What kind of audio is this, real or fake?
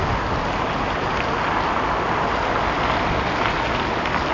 real